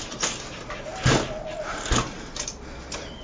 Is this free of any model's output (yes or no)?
yes